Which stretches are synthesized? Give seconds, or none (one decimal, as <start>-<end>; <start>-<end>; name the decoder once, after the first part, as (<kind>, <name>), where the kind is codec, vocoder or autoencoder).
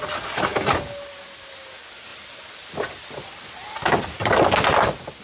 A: 2.1-4.4 (vocoder, BigVGAN v2)